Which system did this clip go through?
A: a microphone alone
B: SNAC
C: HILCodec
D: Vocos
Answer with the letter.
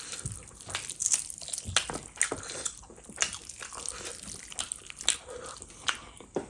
A